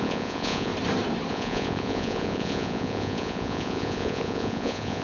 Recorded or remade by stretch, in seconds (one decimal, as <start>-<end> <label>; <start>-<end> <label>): 0.0-0.7 remade; 0.7-1.3 recorded; 1.3-5.0 remade